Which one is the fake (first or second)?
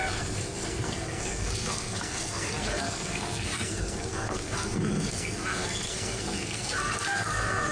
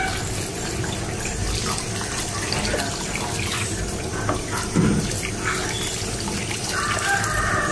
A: first